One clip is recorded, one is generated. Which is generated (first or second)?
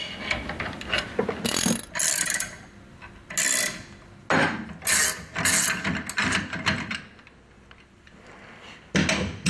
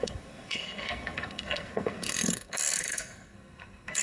second